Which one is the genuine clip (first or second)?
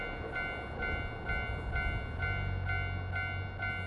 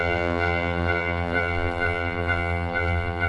first